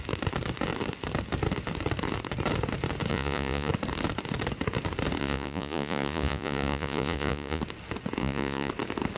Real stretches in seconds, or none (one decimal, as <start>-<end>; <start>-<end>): 0.0-3.1; 3.7-5.2; 7.6-8.2; 8.7-9.2